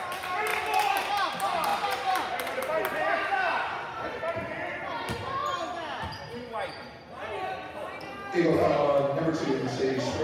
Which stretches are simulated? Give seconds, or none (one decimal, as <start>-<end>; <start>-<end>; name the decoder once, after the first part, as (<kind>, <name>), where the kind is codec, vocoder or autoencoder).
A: 0.5-1.1 (vocoder, BigVGAN v2); 1.7-4.3